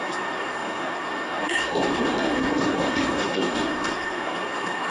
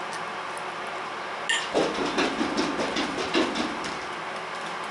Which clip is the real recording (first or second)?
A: second